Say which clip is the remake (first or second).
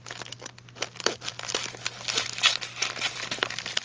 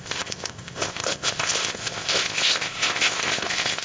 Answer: second